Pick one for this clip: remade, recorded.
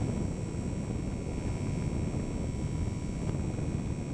recorded